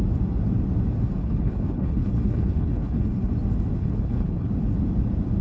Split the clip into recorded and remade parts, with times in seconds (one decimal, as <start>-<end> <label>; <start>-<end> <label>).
0.0-1.2 recorded; 1.2-3.3 remade; 3.3-3.8 recorded; 3.8-4.5 remade; 4.5-5.4 recorded